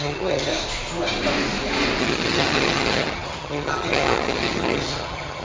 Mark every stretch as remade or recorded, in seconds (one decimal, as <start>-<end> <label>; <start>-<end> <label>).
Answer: 0.0-0.5 remade; 0.5-2.0 recorded; 2.0-5.4 remade